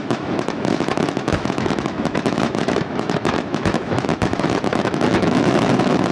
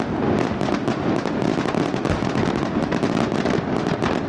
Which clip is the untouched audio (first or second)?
second